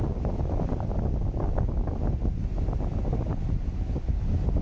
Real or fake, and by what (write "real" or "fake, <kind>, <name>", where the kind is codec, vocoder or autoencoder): real